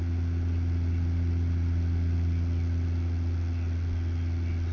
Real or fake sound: real